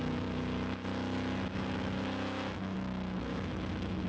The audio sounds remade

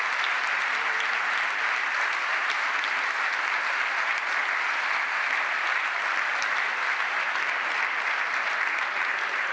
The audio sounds recorded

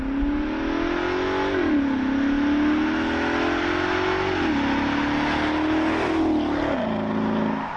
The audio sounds recorded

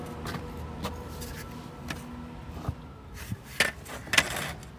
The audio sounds recorded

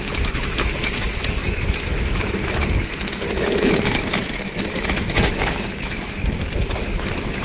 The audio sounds remade